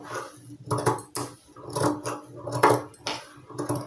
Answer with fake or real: real